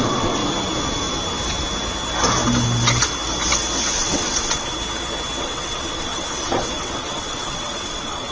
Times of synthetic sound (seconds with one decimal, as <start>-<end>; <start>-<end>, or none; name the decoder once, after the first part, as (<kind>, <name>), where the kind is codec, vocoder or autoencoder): 0.0-0.4 (vocoder, WaveNeXt); 3.9-4.7; 5.4-8.3